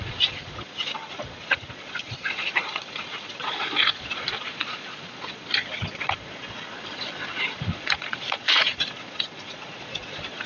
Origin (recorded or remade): remade